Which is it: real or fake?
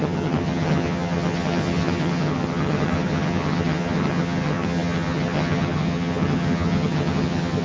fake